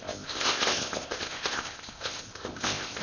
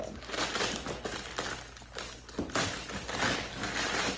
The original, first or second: second